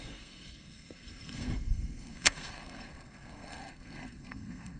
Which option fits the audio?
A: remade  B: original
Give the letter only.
A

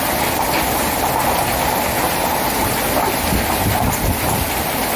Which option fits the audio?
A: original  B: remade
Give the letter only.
A